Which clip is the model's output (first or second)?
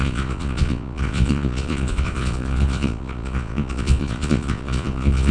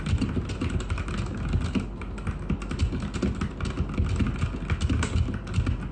first